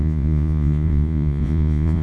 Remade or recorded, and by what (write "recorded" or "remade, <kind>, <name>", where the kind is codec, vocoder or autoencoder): remade, vocoder, Vocos